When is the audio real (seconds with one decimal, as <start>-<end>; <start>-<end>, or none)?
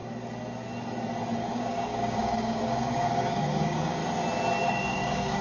0.0-1.4; 4.0-4.6